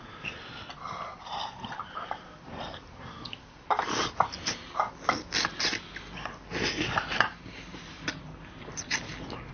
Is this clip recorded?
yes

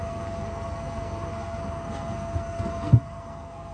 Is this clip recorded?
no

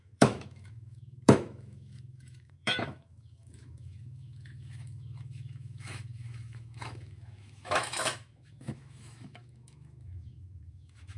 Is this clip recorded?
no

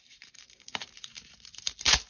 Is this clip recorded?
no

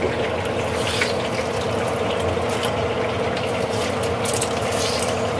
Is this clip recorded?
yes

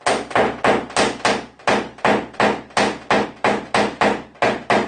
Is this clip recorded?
yes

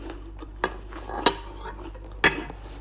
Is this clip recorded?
yes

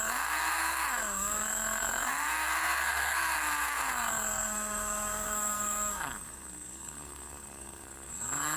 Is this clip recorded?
no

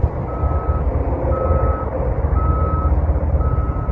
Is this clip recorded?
yes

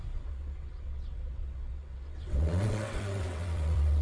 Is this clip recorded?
no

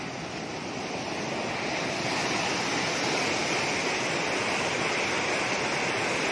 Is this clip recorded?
yes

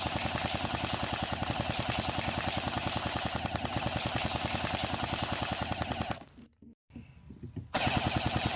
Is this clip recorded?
yes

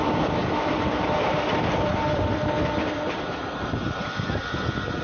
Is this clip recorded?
no